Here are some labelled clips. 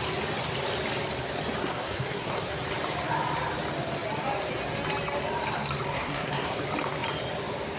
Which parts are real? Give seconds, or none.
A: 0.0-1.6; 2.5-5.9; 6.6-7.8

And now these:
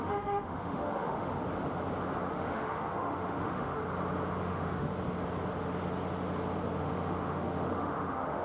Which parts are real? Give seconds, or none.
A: 1.3-2.3; 3.8-4.4; 4.9-6.8

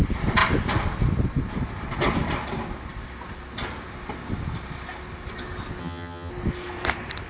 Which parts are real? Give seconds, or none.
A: 0.0-5.8; 6.3-7.3

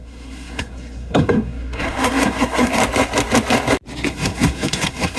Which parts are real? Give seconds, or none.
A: 2.8-4.1

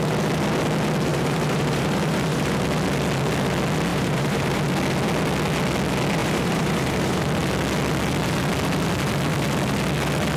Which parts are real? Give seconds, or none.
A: 0.0-1.1; 2.6-3.9; 4.6-6.2; 7.2-10.4